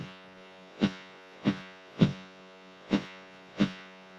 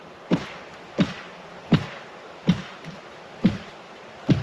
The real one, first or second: second